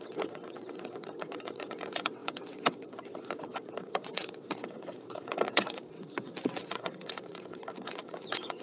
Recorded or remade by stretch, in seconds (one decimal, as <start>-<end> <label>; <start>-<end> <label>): 0.0-8.6 remade